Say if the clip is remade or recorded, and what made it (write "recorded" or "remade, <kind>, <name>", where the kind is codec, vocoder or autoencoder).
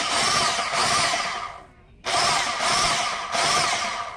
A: recorded